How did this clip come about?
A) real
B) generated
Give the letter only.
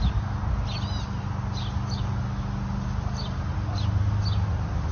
A